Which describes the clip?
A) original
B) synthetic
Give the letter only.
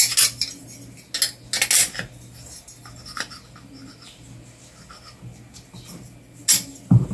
A